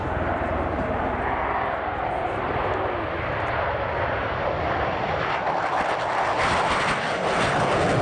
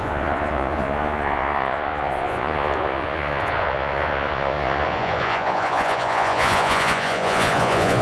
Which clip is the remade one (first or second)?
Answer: second